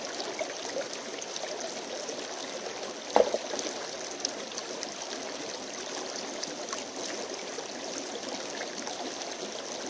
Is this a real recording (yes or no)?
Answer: yes